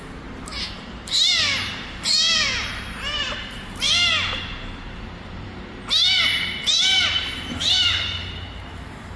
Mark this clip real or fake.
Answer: fake